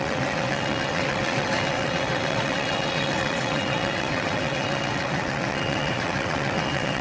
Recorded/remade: remade